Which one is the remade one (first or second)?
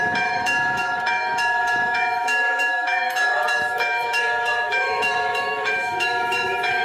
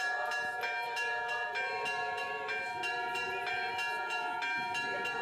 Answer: first